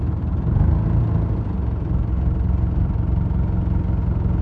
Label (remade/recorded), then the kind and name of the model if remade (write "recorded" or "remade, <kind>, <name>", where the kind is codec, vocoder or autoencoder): recorded